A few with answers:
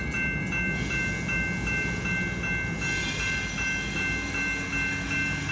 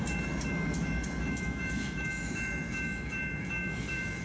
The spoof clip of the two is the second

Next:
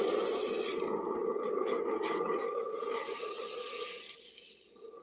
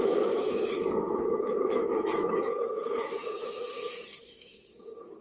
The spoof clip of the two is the second